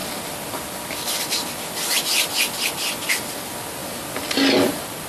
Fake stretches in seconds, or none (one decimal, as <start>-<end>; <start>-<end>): none